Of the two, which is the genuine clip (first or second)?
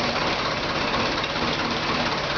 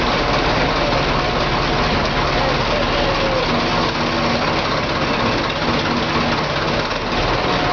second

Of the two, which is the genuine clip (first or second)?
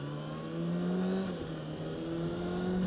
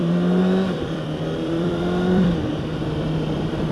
first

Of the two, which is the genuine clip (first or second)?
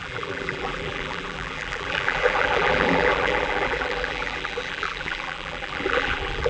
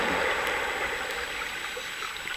second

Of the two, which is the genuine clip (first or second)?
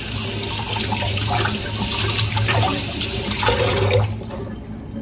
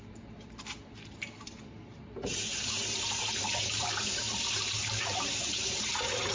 first